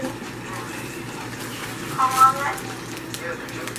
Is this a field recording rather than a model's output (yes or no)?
yes